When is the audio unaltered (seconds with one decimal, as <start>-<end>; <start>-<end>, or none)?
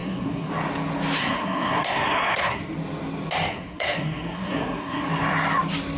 0.5-1.2; 2.6-3.5; 5.1-6.0